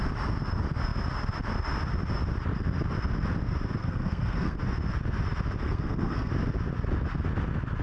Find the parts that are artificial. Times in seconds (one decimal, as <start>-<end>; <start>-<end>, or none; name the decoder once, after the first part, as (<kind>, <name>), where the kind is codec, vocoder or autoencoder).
3.8-4.6 (codec, SNAC); 5.6-6.3